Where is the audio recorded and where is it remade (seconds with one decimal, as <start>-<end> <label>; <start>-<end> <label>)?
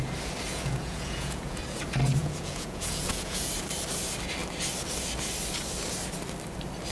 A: 0.0-0.5 recorded; 0.5-1.6 remade; 1.6-2.2 recorded; 2.2-3.5 remade; 3.5-6.9 recorded